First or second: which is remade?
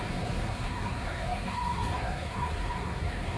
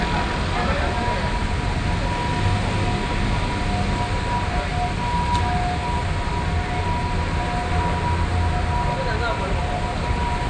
first